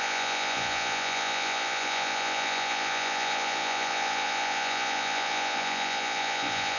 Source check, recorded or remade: remade